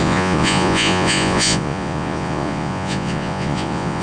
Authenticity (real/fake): fake